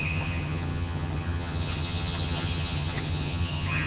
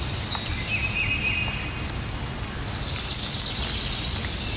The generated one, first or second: first